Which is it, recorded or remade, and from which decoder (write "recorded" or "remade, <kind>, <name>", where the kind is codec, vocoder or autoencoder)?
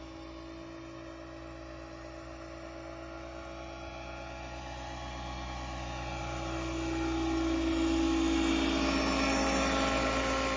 recorded